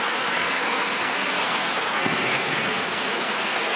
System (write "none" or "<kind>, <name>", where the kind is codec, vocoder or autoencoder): codec, SNAC